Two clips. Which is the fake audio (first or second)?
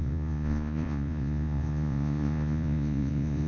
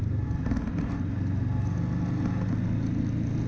first